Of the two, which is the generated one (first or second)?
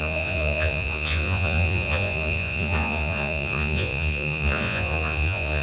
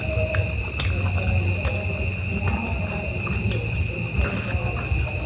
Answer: first